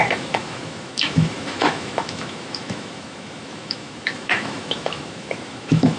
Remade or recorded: remade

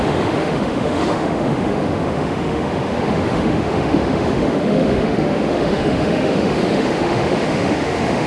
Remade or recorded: remade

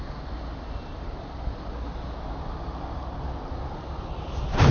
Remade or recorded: recorded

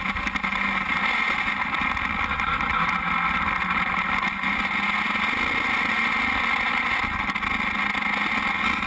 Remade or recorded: recorded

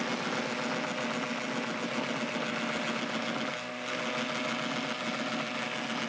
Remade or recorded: recorded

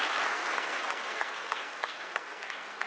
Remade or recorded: remade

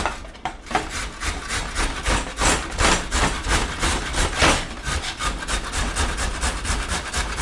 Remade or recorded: recorded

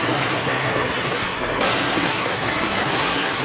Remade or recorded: remade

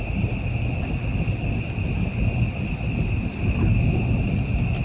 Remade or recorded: recorded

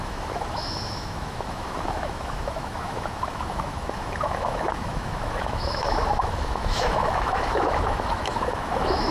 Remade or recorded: remade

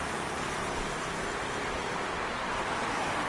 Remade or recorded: recorded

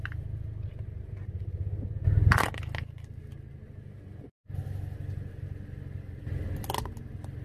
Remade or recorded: recorded